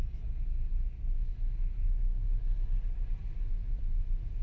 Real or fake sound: real